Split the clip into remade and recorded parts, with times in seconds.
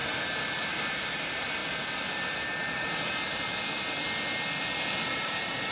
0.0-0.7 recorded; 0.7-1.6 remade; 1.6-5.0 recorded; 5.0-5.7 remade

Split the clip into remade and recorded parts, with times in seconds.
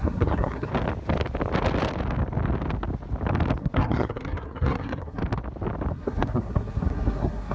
0.0-0.7 remade; 0.7-3.6 recorded; 3.6-5.2 remade; 5.2-5.9 recorded; 5.9-7.5 remade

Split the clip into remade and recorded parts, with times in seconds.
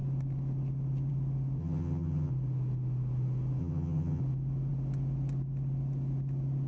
0.0-1.6 recorded; 1.6-2.3 remade; 2.3-3.6 recorded; 3.6-4.2 remade; 4.2-6.7 recorded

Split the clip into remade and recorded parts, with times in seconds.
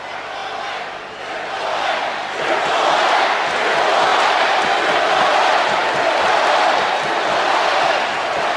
0.0-8.6 recorded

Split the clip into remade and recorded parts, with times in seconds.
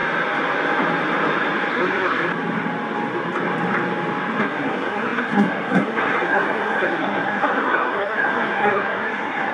0.0-1.7 recorded; 1.7-2.3 remade; 2.3-4.4 recorded; 4.4-9.5 remade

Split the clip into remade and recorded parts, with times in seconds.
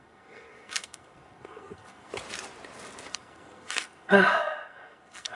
0.0-2.1 remade; 2.1-3.1 recorded; 3.1-5.3 remade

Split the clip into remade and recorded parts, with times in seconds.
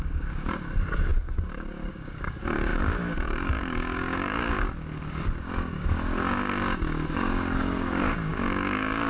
0.0-9.1 remade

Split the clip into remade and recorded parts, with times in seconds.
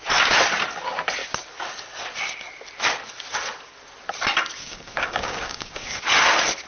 0.0-4.6 recorded; 4.6-6.0 remade; 6.0-6.7 recorded